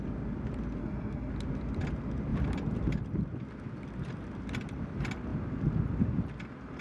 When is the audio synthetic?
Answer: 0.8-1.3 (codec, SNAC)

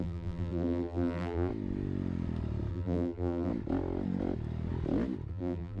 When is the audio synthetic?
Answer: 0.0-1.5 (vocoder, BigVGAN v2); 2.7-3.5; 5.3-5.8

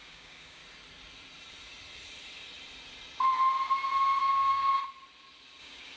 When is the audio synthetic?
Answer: 0.0-0.6 (codec, DAC); 4.2-4.8; 5.6-6.0

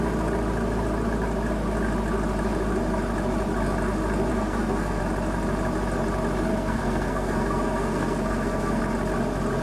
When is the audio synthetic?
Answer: 4.3-5.0 (codec, SNAC); 6.5-8.8